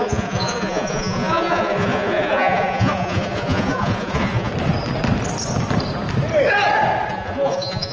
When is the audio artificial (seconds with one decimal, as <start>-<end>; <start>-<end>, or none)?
0.0-4.5; 7.1-7.9